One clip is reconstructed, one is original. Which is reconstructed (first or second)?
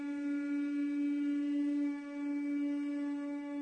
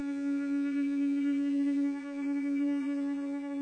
second